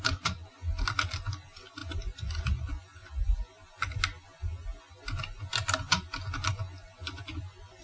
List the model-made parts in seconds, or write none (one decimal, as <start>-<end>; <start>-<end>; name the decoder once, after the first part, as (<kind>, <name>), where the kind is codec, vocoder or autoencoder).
none